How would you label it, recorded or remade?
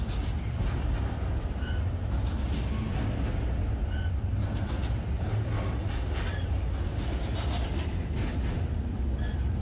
recorded